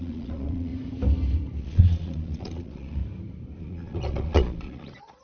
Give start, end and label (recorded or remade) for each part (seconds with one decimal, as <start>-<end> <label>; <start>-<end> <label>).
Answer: 0.0-0.7 remade; 0.7-1.6 recorded; 1.6-3.0 remade; 3.0-3.6 recorded; 3.6-5.2 remade